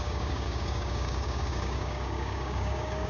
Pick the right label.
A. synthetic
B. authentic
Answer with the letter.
A